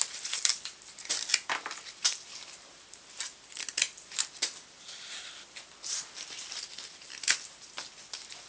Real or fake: fake